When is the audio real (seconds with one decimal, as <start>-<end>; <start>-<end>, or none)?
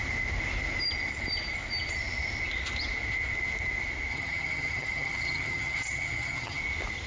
0.0-4.1; 6.6-7.1